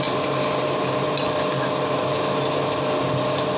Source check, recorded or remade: recorded